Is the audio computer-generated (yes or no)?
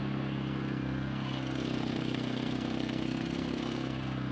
yes